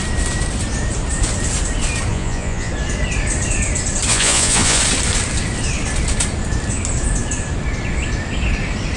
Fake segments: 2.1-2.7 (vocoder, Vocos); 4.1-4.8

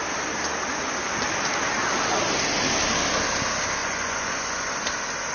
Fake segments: 3.8-4.7 (vocoder, Vocos)

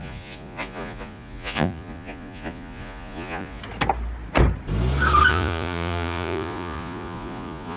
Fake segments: 0.0-3.6 (vocoder, Vocos); 5.3-7.8

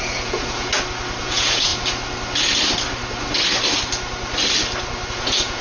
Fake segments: 0.0-0.7 (vocoder, Vocos); 1.2-1.7; 5.1-5.6

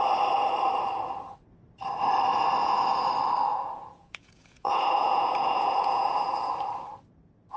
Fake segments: 2.6-3.1 (vocoder, Vocos); 3.5-6.5

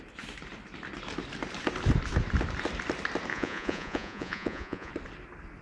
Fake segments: 3.3-4.9 (vocoder, Vocos)

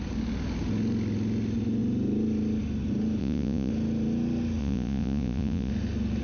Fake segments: 3.2-3.7 (vocoder, Vocos); 4.6-5.7